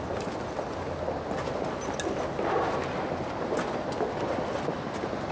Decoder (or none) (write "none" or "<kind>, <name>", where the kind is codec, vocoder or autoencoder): none